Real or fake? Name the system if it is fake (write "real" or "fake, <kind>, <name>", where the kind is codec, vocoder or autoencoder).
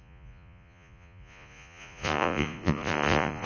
fake, vocoder, Vocos